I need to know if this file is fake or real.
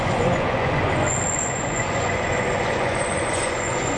fake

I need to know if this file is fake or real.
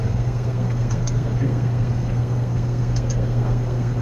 fake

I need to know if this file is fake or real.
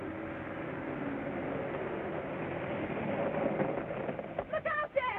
real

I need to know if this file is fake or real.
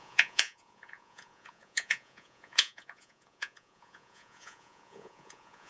fake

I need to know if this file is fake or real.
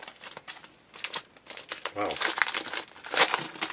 real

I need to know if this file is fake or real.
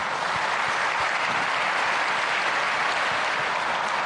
real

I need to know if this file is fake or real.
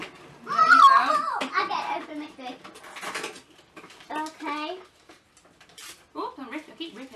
real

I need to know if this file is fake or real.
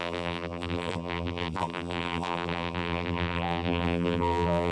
fake